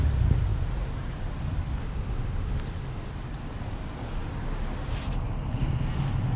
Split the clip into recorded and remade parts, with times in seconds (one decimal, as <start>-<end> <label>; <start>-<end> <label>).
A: 0.0-1.8 recorded; 1.8-3.1 remade; 3.1-6.4 recorded